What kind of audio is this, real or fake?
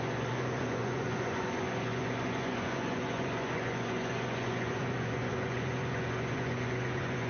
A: fake